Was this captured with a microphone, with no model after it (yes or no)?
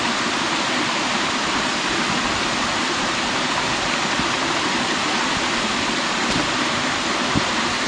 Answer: yes